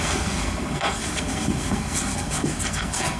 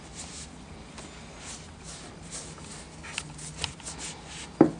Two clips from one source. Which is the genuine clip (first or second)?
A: second